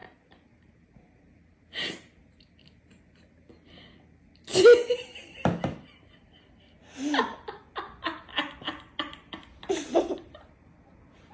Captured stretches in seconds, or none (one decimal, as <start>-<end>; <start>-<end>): 0.0-11.3